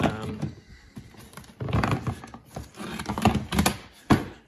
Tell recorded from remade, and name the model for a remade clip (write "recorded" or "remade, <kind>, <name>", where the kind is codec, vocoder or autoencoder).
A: recorded